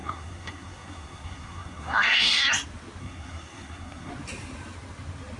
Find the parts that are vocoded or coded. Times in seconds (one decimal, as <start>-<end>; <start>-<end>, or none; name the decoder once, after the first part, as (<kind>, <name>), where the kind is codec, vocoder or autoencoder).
0.0-2.4 (codec, SNAC); 3.0-4.1